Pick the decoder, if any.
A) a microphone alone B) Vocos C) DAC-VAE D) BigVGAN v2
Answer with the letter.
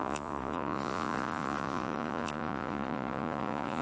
B